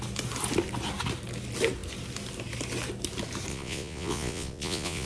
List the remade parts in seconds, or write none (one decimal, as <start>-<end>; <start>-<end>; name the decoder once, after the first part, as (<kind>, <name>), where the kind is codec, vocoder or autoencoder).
3.5-5.1 (vocoder, Vocos)